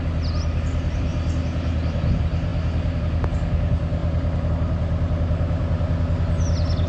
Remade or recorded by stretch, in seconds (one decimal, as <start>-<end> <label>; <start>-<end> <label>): 0.0-6.9 recorded